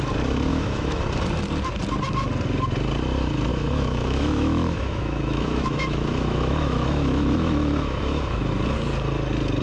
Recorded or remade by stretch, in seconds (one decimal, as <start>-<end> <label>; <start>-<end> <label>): 0.0-0.5 recorded; 0.5-1.0 remade; 1.0-3.5 recorded; 3.5-8.5 remade; 8.5-9.6 recorded